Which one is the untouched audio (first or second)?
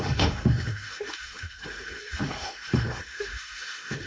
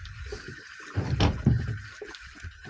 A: second